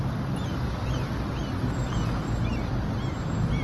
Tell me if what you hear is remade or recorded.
recorded